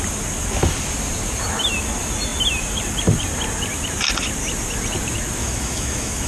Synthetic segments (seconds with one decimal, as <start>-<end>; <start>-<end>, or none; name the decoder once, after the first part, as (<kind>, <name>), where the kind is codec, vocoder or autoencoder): 5.4-6.3 (autoencoder, DAC-VAE)